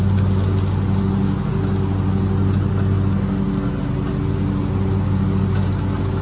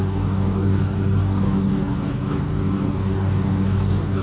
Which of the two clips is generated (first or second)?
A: second